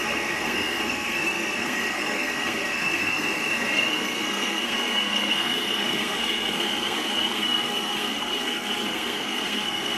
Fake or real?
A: fake